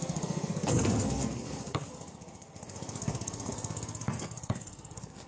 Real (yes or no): no